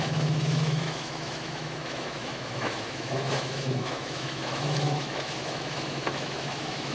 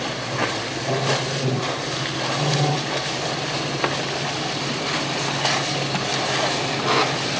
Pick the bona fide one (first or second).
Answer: second